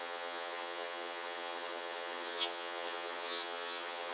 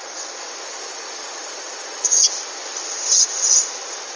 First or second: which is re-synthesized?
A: first